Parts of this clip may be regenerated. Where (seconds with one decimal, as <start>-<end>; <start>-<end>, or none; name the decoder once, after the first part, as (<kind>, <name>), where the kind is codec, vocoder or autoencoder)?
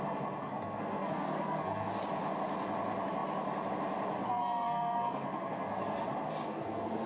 0.4-2.0 (codec, SNAC); 4.2-6.1; 6.5-7.1